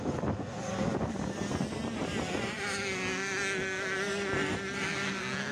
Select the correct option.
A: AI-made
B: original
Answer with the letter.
B